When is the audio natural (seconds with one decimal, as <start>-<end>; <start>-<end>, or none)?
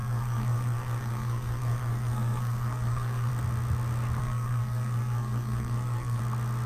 3.3-4.2; 6.2-6.7